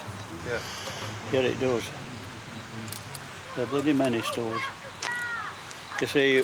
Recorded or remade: recorded